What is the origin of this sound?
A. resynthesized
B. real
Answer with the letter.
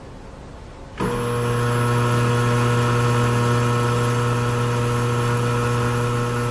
B